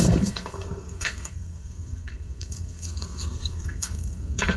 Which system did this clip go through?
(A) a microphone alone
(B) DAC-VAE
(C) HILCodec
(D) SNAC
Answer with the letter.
D